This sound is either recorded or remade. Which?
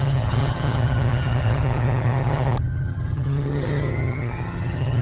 remade